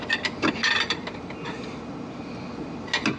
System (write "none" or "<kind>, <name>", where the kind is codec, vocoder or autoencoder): none